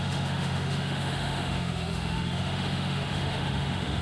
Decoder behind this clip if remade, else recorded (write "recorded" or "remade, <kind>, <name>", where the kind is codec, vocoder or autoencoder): remade, autoencoder, DAC-VAE